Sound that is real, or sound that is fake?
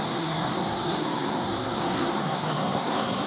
fake